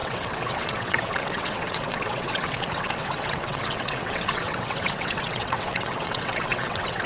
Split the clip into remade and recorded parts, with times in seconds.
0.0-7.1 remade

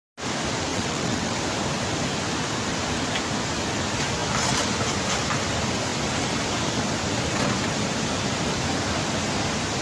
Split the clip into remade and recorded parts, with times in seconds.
0.0-0.7 recorded; 0.7-1.4 remade; 1.4-9.8 recorded

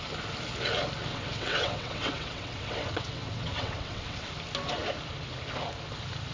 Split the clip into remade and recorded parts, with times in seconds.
0.0-1.1 recorded; 1.1-4.3 remade; 4.3-6.3 recorded

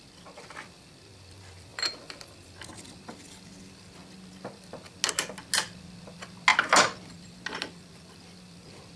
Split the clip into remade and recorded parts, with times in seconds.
0.0-9.0 recorded

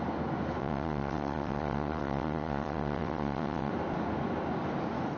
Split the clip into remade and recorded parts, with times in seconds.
0.0-0.6 recorded; 0.6-3.7 remade; 3.7-5.2 recorded

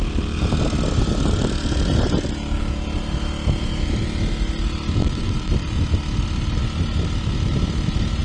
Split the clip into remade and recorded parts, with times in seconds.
0.0-5.0 recorded; 5.0-5.5 remade; 5.5-8.2 recorded

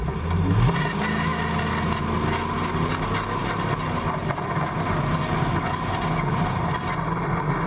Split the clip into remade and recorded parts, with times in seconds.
0.0-7.7 recorded